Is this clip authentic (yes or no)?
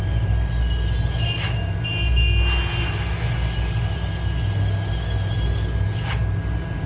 yes